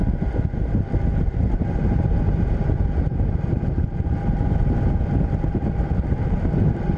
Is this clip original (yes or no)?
no